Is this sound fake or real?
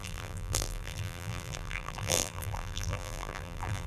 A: fake